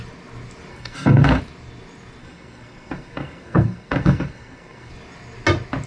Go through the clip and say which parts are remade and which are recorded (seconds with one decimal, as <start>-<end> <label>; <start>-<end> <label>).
0.0-0.7 recorded; 0.7-1.4 remade; 1.4-2.2 recorded; 2.2-4.9 remade; 4.9-5.9 recorded